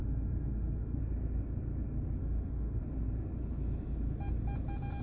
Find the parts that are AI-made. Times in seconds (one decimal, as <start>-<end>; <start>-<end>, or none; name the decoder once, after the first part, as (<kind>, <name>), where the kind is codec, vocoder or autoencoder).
0.0-1.0 (autoencoder, DAC-VAE); 2.2-2.8